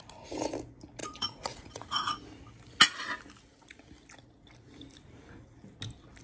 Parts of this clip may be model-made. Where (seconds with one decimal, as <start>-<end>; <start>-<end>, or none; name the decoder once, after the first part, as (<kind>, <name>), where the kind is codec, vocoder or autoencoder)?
1.0-2.1 (vocoder, Vocos)